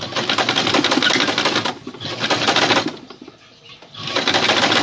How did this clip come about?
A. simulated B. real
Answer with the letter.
B